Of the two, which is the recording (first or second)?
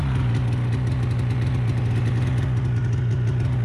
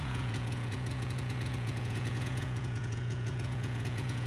first